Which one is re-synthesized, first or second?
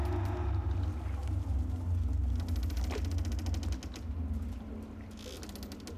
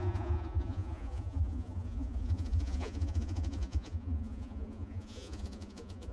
second